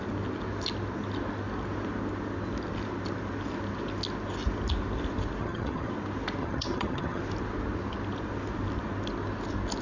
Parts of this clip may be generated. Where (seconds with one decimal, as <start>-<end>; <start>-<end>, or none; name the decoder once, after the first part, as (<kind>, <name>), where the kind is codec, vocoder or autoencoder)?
5.4-5.9 (vocoder, HiFi-GAN); 6.4-7.2